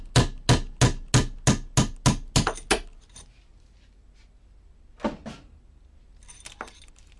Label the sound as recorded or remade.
recorded